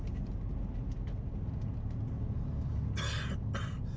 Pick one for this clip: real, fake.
real